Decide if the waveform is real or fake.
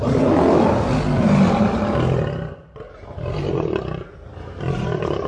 real